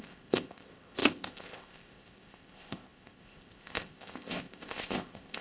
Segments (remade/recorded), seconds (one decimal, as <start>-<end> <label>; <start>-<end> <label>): 0.0-5.4 remade